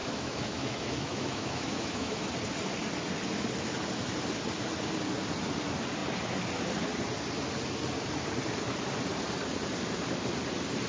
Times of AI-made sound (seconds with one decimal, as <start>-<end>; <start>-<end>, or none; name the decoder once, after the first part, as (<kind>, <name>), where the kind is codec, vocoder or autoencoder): 0.0-2.3 (autoencoder, DAC-VAE)